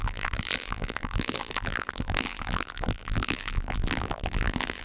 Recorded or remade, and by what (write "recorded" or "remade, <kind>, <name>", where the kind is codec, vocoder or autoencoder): remade, vocoder, BigVGAN v2